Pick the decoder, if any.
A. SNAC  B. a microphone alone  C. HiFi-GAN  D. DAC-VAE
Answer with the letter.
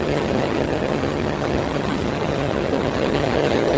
C